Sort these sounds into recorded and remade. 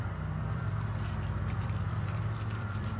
remade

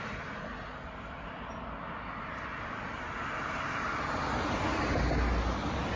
recorded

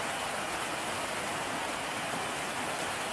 recorded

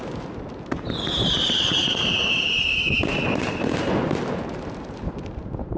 remade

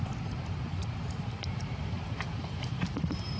remade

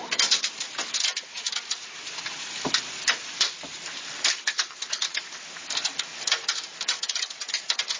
remade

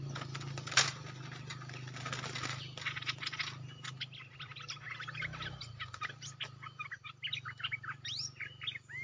recorded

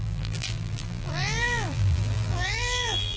remade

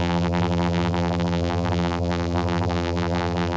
remade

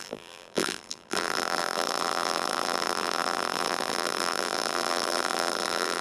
remade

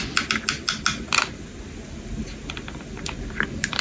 recorded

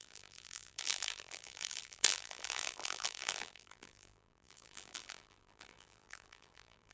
remade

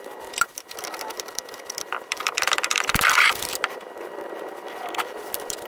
remade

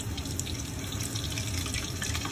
remade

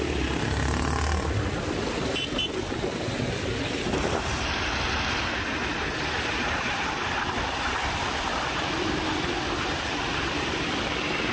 recorded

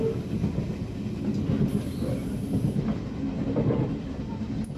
recorded